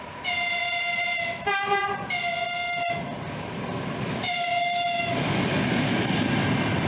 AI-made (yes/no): no